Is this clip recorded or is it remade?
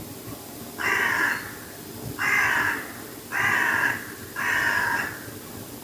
recorded